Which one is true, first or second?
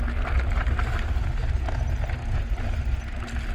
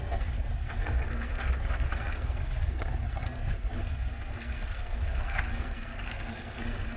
first